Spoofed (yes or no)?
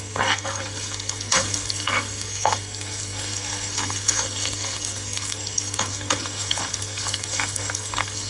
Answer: yes